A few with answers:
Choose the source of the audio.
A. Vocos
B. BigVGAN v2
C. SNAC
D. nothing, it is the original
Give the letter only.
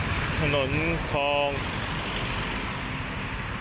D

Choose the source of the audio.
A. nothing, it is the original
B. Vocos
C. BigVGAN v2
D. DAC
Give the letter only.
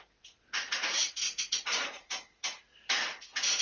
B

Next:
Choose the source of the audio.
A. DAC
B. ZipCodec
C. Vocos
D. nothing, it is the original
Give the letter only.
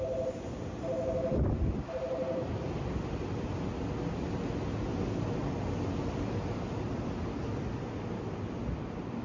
D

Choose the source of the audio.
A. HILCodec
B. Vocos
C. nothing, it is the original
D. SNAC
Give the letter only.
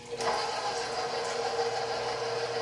C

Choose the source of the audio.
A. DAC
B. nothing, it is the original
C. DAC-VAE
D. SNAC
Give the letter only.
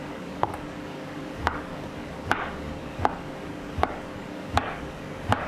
A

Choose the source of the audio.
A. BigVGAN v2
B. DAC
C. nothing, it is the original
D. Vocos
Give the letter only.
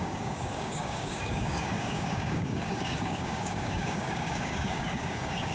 B